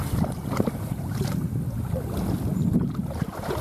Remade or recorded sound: recorded